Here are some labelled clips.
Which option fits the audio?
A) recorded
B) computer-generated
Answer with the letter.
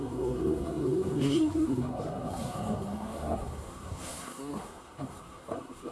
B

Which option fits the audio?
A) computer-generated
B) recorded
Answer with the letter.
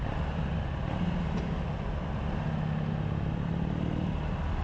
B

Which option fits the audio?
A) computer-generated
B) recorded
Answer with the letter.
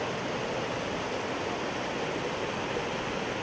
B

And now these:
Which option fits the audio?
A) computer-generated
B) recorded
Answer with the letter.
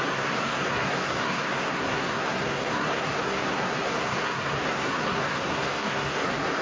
A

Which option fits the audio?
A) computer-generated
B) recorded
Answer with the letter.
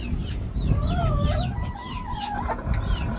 B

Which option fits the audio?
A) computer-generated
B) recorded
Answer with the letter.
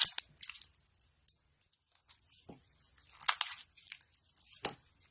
B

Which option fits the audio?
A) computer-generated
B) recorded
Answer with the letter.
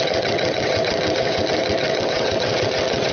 A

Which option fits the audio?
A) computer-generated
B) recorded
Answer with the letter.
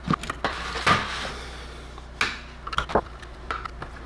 B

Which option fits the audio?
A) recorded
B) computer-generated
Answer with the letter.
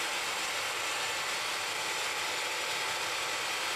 A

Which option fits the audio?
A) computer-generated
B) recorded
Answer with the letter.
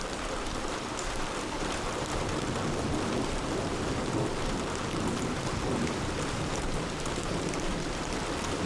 A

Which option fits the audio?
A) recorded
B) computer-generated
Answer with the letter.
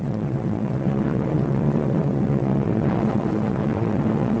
B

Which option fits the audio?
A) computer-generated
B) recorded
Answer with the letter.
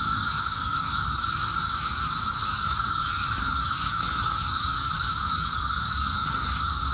A